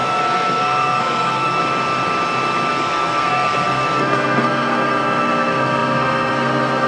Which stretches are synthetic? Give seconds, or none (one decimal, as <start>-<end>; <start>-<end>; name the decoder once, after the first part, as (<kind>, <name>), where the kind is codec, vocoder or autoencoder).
0.0-1.6 (codec, SNAC); 2.7-6.9